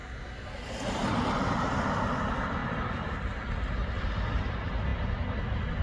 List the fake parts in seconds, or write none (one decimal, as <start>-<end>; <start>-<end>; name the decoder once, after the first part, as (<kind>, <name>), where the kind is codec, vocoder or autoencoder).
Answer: none